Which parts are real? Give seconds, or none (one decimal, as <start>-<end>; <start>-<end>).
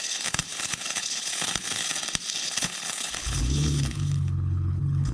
1.9-2.4